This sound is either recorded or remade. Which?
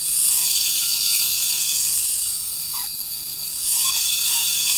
remade